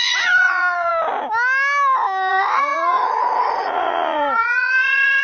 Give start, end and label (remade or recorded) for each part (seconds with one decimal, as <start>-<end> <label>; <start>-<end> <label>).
0.0-0.9 remade; 0.9-2.3 recorded; 2.3-5.2 remade